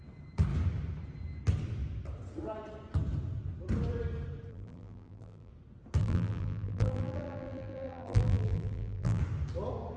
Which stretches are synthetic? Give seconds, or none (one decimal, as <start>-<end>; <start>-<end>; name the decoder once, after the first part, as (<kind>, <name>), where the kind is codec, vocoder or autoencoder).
4.5-5.5 (vocoder, BigVGAN v2); 6.0-9.2